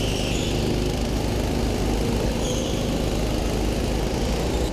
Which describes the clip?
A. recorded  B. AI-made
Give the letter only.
A